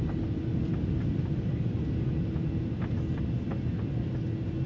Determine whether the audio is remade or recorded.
recorded